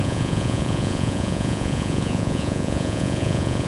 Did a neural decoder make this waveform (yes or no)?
yes